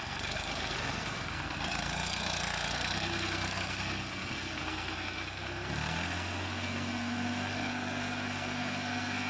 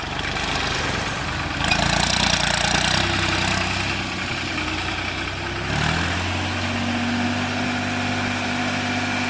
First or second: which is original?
second